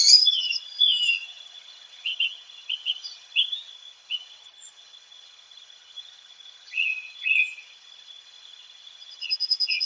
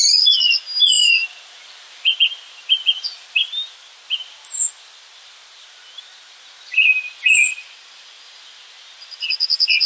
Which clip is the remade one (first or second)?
first